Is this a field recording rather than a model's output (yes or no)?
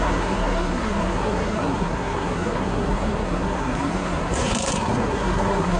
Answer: no